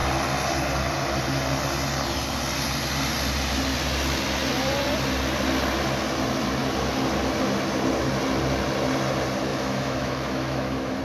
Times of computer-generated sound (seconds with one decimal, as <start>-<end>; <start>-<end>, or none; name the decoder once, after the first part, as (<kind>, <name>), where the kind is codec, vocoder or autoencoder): 9.5-11.0 (autoencoder, DAC-VAE)

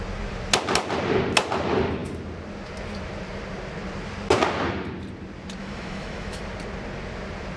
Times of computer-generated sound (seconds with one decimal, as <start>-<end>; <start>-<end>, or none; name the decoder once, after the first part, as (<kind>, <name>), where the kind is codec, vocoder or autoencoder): 5.6-6.4 (autoencoder, DAC-VAE)